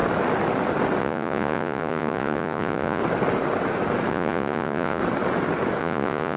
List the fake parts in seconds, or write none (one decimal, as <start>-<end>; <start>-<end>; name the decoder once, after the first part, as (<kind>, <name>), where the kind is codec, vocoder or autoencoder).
1.0-3.0 (vocoder, Vocos); 4.1-5.0; 5.8-6.4